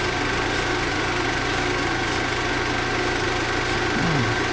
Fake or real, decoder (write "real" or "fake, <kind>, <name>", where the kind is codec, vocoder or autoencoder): real